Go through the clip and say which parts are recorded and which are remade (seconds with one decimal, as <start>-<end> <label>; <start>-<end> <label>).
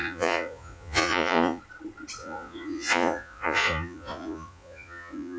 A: 0.0-1.6 remade; 1.6-2.2 recorded; 2.2-5.4 remade